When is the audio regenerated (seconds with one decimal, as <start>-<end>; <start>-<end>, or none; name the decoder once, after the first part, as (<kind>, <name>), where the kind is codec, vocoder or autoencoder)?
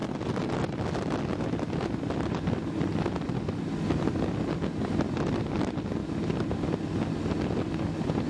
none